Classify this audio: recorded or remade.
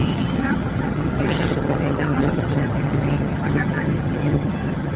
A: remade